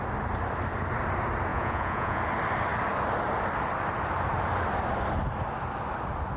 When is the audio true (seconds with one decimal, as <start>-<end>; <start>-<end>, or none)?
0.0-1.5; 2.2-6.4

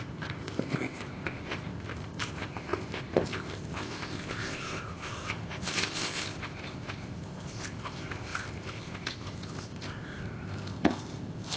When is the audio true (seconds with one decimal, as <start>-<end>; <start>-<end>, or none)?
none

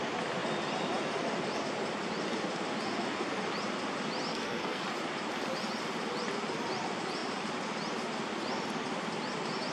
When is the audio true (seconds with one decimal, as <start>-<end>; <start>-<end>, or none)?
0.0-4.3; 4.8-9.7